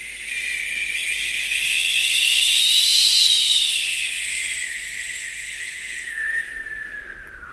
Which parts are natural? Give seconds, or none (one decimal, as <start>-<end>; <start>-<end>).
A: 0.0-0.6; 2.6-3.4; 4.3-4.7; 6.4-7.5